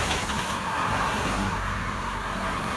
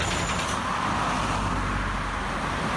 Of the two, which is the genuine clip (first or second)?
second